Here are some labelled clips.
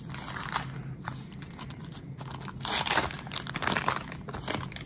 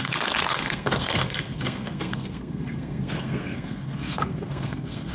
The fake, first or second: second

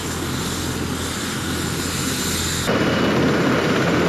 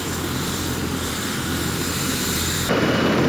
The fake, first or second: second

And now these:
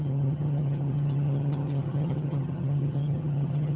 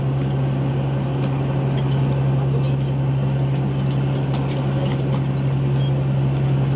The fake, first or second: first